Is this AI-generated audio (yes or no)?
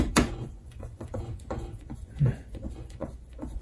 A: yes